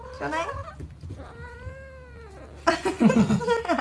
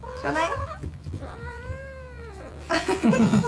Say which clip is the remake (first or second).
second